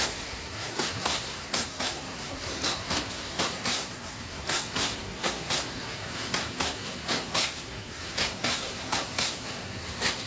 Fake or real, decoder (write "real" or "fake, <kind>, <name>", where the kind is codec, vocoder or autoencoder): fake, codec, SNAC